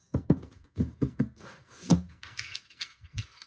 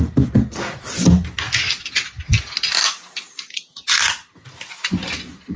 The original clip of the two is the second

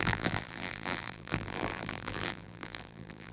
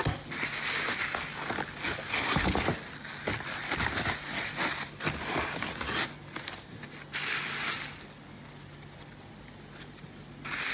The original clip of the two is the second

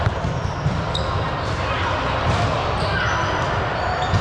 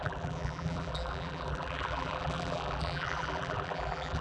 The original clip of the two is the first